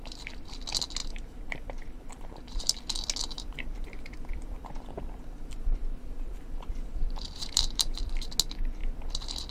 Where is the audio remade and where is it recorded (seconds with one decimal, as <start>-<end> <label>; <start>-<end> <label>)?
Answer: 0.0-1.0 recorded; 1.0-2.8 remade; 2.8-3.2 recorded; 3.2-8.3 remade; 8.3-9.5 recorded

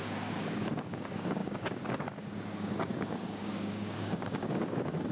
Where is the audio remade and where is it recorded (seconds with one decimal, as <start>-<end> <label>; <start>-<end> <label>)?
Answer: 0.0-5.1 remade

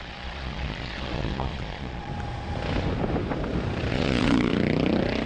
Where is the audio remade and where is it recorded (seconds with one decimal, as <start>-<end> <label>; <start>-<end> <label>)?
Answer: 0.0-2.1 remade; 2.1-3.9 recorded; 3.9-4.5 remade; 4.5-5.3 recorded

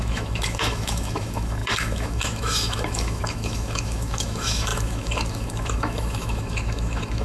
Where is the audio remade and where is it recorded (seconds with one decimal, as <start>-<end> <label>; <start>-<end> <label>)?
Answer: 0.0-7.2 remade

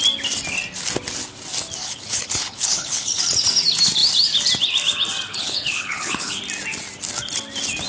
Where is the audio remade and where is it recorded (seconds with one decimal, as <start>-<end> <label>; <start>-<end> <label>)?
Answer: 0.0-1.8 recorded; 1.8-3.2 remade; 3.2-5.3 recorded; 5.3-6.4 remade; 6.4-7.9 recorded